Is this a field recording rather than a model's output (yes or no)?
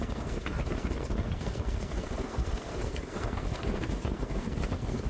no